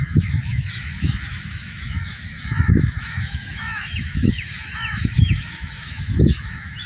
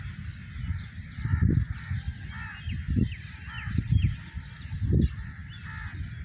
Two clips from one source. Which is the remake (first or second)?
first